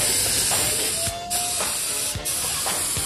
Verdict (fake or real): real